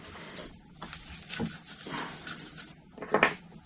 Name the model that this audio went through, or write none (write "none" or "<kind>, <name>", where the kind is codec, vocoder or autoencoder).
none